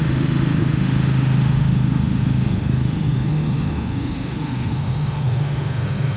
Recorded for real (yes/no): no